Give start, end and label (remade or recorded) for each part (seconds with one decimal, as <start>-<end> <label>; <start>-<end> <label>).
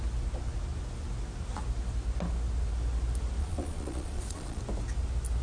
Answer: 0.0-3.4 recorded; 3.4-4.6 remade; 4.6-5.4 recorded